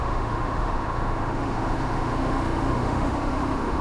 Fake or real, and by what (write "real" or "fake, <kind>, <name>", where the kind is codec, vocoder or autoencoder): fake, autoencoder, DAC-VAE